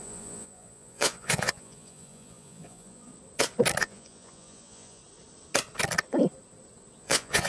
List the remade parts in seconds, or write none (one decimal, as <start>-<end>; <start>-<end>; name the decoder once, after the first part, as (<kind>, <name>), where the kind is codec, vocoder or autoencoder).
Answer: 0.0-3.1 (vocoder, Vocos); 3.8-5.0; 7.0-7.5